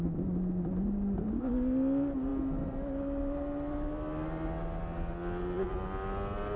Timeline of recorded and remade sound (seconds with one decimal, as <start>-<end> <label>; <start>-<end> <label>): 0.0-6.6 recorded